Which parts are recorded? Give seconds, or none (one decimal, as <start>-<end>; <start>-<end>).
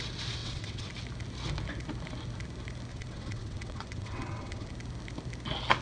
0.0-0.4; 0.9-2.9; 4.7-5.8